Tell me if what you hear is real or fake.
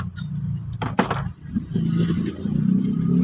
real